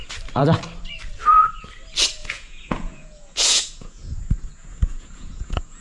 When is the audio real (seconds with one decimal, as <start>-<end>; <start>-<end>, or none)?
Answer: 0.0-2.2